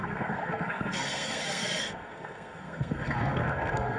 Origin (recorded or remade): remade